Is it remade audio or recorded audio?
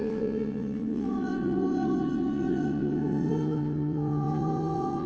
remade